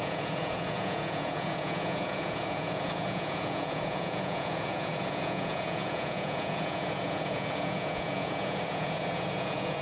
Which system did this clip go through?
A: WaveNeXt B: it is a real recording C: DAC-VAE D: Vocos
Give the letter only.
D